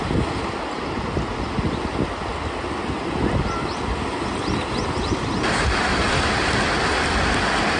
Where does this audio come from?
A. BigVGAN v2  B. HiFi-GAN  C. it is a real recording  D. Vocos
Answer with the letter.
C